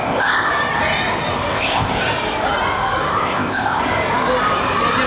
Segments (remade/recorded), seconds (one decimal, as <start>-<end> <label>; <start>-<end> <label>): 0.0-0.5 remade; 0.5-1.5 recorded; 1.5-2.0 remade; 2.0-3.1 recorded; 3.1-3.8 remade; 3.8-5.1 recorded